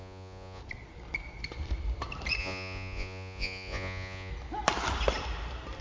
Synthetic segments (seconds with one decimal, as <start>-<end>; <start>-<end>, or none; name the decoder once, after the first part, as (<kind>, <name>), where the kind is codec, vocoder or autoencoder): 0.0-0.6 (vocoder, Vocos); 2.4-4.3